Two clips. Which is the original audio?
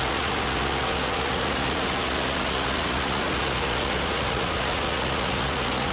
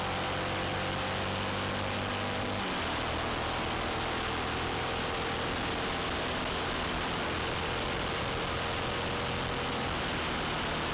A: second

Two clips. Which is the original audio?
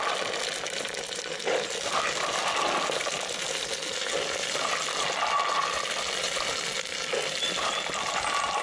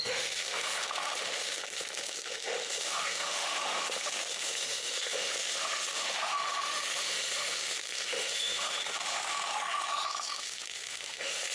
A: first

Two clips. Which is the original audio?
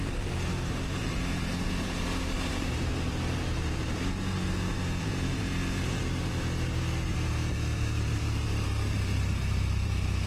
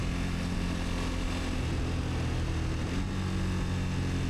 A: second